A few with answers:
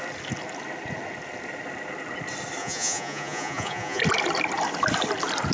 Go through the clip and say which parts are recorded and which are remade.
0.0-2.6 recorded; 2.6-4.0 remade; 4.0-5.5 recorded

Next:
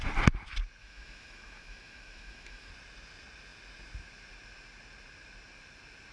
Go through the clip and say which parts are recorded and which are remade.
0.0-0.8 recorded; 0.8-2.7 remade; 2.7-6.1 recorded

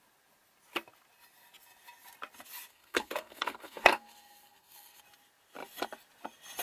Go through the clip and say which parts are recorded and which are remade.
0.0-2.7 recorded; 2.7-5.0 remade; 5.0-6.6 recorded

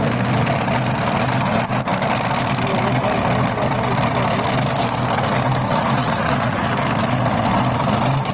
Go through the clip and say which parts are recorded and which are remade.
0.0-5.7 recorded; 5.7-6.7 remade; 6.7-8.3 recorded

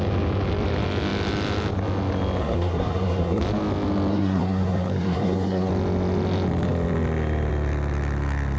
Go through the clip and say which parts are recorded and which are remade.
0.0-2.4 recorded; 2.4-3.4 remade; 3.4-4.1 recorded; 4.1-5.7 remade; 5.7-8.6 recorded

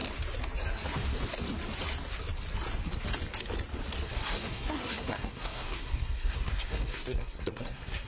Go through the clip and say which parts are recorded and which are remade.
0.0-4.0 recorded; 4.0-8.1 remade